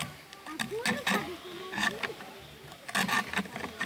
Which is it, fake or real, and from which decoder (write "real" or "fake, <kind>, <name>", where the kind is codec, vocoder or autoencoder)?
real